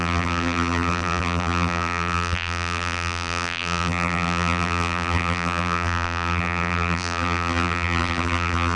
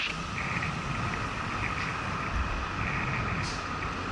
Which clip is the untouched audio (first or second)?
second